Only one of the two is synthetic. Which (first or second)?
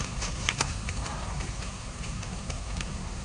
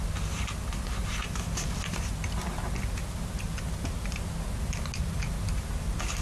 first